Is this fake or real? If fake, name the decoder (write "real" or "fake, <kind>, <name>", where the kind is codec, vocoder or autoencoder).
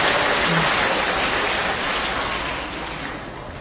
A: real